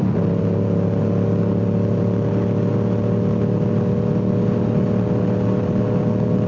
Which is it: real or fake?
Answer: real